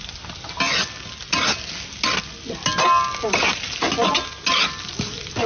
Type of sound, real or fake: real